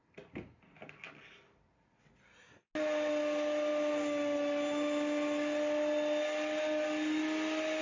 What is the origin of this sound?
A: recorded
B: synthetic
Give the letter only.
A